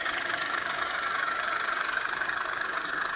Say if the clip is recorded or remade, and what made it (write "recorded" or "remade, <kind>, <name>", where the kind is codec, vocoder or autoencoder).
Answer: remade, codec, DAC